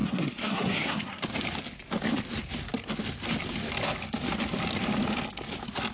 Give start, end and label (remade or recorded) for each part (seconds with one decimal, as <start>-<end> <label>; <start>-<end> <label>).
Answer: 0.0-1.2 remade; 1.2-5.9 recorded